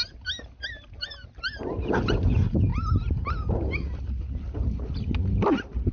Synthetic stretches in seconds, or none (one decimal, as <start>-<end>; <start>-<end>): none